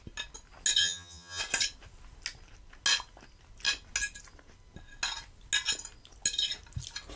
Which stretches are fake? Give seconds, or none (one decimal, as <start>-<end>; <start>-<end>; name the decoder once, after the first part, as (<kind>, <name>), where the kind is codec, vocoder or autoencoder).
0.8-1.4 (vocoder, HiFi-GAN)